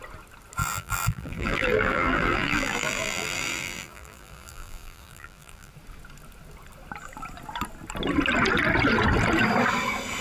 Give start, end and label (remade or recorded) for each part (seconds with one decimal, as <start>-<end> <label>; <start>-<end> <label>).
0.0-0.6 recorded; 0.6-5.7 remade; 5.7-10.2 recorded